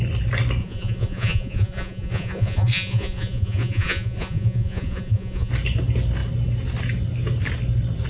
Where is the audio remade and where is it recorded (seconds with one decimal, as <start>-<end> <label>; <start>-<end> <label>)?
0.0-0.6 recorded; 0.6-5.5 remade; 5.5-8.1 recorded